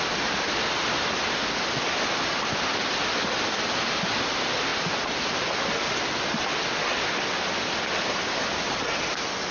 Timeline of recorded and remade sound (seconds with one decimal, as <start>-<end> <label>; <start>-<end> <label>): 0.0-9.5 recorded